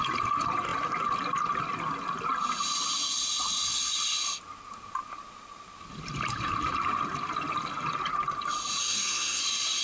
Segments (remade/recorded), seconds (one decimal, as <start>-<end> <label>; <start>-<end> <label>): 0.0-8.8 recorded; 8.8-9.4 remade; 9.4-9.8 recorded